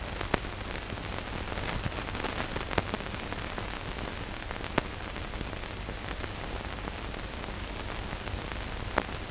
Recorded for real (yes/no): yes